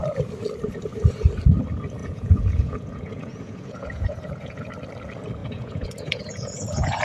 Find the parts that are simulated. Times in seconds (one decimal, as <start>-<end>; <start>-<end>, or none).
2.0-4.7; 5.4-7.0